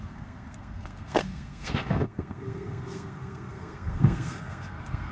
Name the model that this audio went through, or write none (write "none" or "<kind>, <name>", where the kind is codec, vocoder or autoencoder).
codec, SNAC